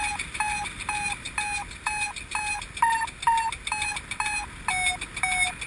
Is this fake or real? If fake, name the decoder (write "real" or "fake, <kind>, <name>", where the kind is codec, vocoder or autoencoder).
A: real